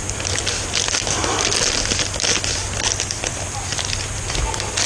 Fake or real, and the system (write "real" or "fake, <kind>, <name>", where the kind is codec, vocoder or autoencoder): real